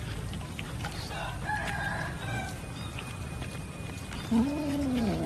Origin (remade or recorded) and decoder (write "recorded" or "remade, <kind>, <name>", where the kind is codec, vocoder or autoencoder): recorded